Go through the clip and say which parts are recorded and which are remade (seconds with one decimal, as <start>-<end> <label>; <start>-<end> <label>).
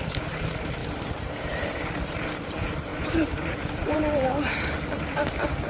0.0-5.7 remade